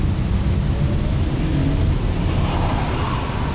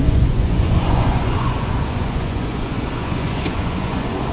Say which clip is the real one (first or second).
first